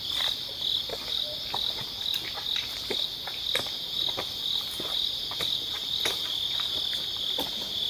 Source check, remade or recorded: recorded